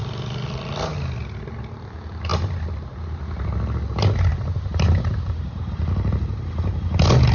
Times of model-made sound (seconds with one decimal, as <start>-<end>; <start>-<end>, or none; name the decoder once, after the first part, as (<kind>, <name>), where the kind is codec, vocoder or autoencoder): 4.3-5.8 (vocoder, BigVGAN v2)